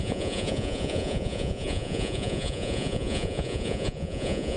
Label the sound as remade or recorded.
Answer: remade